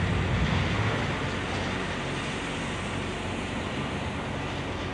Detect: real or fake real